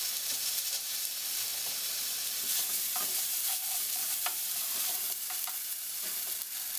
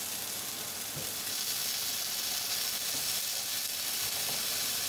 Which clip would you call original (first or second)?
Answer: second